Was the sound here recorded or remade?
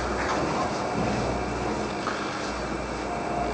recorded